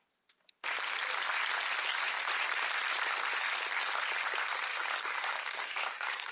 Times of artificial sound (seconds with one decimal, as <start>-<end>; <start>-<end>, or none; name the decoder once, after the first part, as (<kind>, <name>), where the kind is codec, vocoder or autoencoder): 4.7-6.3 (codec, DAC)